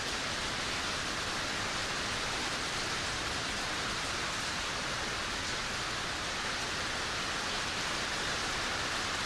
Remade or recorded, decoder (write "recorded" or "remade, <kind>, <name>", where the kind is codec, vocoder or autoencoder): recorded